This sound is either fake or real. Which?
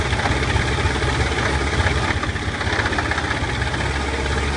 real